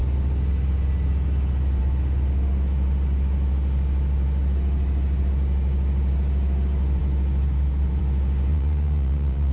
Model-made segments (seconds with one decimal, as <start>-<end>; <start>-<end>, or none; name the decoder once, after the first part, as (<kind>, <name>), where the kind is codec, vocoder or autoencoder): 8.5-9.5 (vocoder, Vocos)